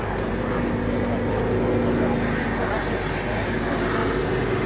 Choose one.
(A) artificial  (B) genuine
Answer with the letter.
B